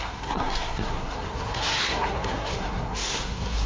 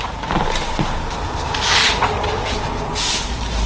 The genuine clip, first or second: second